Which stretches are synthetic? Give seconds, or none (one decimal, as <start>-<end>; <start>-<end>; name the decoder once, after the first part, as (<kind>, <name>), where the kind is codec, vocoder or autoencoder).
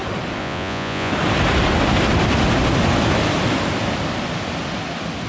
0.4-1.1 (vocoder, Vocos)